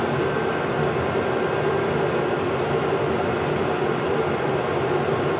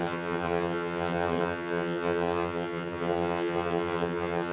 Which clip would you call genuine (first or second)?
first